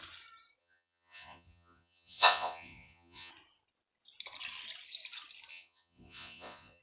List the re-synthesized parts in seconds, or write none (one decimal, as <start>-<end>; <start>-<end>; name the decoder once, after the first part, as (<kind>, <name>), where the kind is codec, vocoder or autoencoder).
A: 0.6-3.3 (vocoder, Vocos); 5.5-6.8